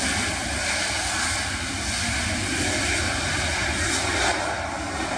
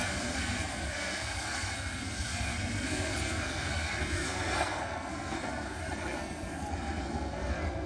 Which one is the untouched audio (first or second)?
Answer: first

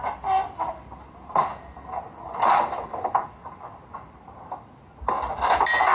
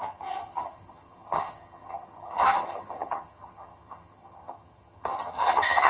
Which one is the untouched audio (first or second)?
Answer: first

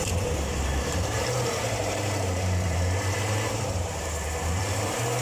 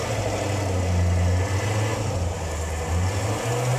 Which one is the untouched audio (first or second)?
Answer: second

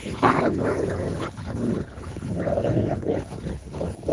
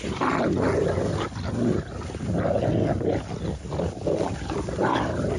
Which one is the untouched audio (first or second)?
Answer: second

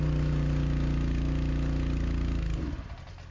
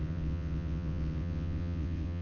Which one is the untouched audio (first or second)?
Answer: first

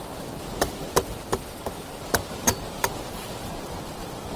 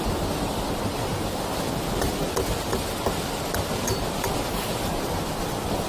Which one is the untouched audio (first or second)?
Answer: second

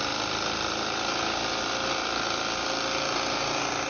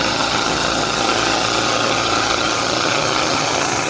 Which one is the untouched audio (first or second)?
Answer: first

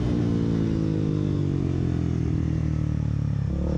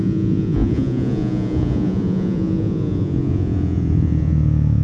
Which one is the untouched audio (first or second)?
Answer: first